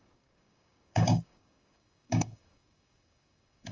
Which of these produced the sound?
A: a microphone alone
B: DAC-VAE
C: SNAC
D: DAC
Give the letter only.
D